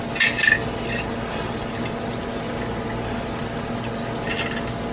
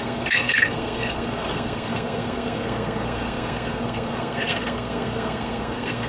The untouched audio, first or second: first